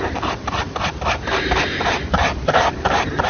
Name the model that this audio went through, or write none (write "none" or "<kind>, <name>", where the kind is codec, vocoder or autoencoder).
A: none